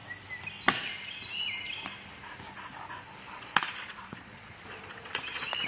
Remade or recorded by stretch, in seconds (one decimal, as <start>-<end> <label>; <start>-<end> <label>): 0.0-3.4 recorded; 3.4-5.7 remade

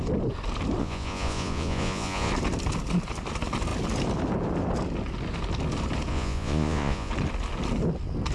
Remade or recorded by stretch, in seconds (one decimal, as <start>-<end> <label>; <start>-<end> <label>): 0.0-0.8 recorded; 0.8-2.3 remade; 2.3-6.1 recorded; 6.1-7.1 remade; 7.1-8.3 recorded

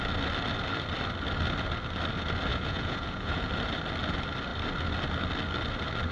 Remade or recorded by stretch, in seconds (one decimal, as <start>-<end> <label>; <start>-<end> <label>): 0.0-2.5 recorded; 2.5-3.5 remade; 3.5-6.1 recorded

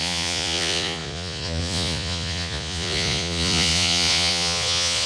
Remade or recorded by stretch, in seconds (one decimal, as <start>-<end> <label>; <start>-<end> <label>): 0.0-5.1 remade